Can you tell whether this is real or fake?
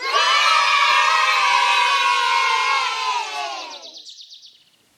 real